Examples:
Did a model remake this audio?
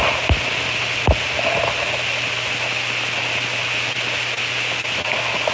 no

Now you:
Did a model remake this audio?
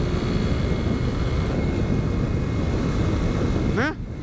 no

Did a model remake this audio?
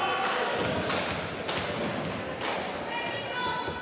no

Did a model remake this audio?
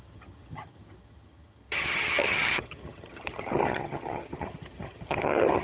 yes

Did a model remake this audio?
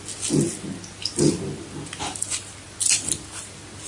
no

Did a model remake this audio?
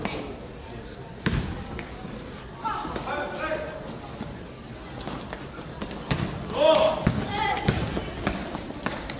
no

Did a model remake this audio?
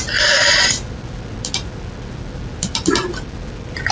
no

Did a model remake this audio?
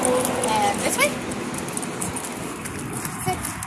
no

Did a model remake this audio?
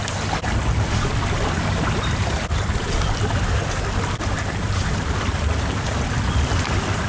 no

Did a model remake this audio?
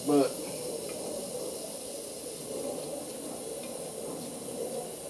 no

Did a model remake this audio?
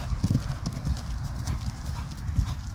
no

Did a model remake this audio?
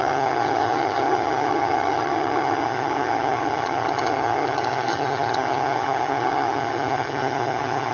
yes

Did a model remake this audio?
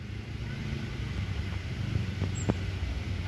no